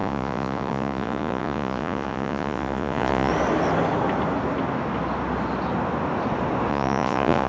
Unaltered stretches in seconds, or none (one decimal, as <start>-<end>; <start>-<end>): 3.3-6.7